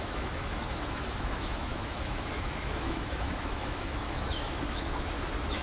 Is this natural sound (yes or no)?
no